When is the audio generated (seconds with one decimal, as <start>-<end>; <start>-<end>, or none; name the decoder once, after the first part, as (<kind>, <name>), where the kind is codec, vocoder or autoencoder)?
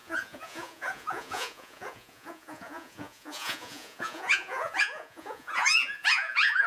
0.0-6.7 (vocoder, Vocos)